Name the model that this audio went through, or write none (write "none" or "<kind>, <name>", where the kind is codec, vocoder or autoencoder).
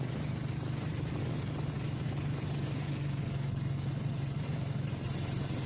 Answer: none